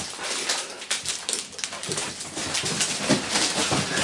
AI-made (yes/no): no